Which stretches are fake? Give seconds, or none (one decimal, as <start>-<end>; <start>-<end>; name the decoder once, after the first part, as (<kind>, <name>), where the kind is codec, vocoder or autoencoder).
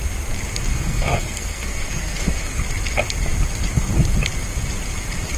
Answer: 0.7-2.6 (codec, SNAC)